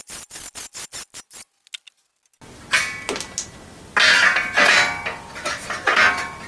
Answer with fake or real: real